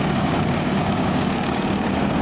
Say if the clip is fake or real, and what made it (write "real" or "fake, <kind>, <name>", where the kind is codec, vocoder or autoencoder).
fake, codec, DAC